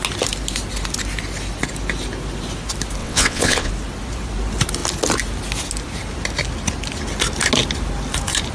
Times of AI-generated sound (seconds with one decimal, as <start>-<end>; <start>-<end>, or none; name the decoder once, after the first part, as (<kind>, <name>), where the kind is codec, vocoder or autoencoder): 3.0-3.7 (vocoder, WaveNeXt)